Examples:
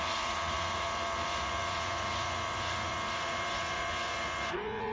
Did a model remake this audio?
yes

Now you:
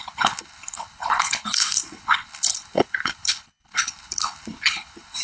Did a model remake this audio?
yes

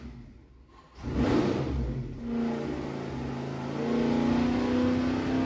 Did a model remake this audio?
no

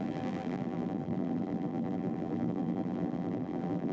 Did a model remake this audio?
yes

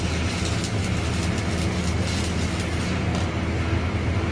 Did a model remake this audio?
no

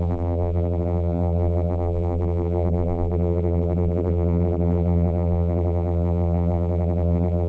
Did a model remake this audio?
yes